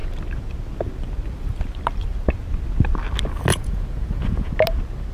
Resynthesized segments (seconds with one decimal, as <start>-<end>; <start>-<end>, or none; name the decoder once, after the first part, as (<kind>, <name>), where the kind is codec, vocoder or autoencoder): 3.5-4.5 (vocoder, Vocos)